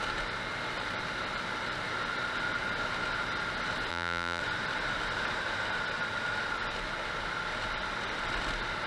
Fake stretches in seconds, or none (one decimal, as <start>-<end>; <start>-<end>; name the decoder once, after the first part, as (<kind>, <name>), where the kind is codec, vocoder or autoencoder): 3.9-4.4 (vocoder, BigVGAN v2)